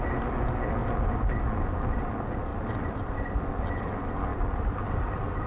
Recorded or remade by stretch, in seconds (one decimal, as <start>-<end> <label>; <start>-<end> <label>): 0.0-0.8 recorded; 0.8-2.1 remade; 2.1-2.5 recorded; 2.5-3.6 remade; 3.6-4.3 recorded; 4.3-5.5 remade